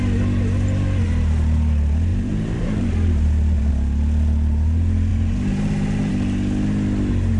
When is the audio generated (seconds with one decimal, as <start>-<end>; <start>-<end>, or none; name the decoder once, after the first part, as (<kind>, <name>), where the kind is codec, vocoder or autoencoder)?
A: 2.1-3.7 (vocoder, BigVGAN v2); 5.1-6.1